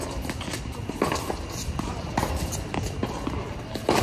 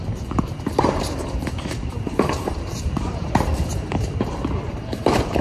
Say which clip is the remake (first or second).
second